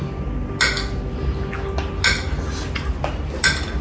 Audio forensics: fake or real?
real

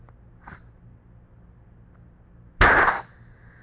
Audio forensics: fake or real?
real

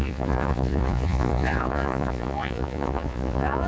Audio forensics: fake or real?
fake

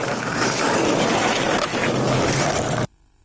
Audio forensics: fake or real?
fake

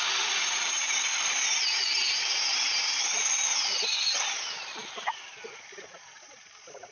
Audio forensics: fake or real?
real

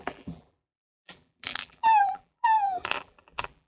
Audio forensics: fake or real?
fake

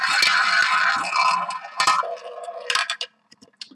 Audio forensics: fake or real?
real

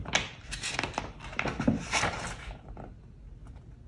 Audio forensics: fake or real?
real